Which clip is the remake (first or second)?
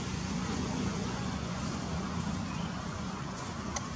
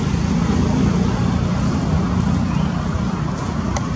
first